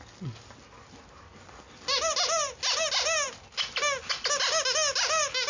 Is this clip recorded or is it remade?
recorded